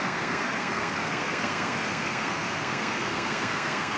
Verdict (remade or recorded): remade